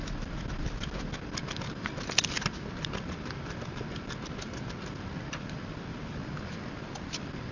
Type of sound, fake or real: real